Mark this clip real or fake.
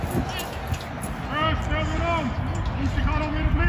real